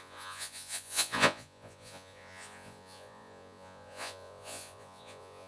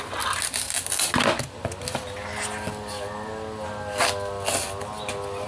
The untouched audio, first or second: second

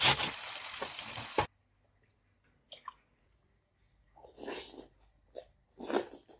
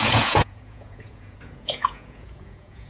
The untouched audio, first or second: first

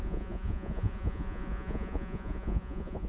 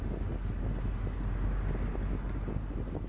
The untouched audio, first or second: second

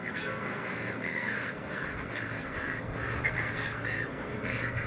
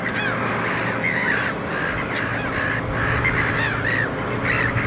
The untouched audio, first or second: second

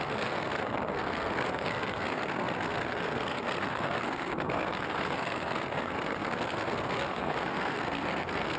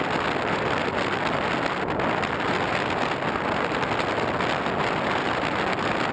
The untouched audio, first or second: second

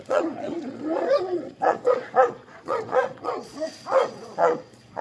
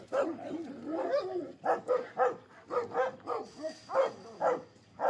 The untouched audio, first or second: second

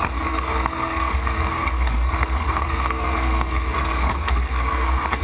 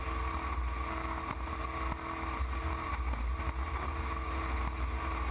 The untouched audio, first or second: second